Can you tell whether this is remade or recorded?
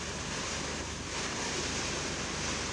recorded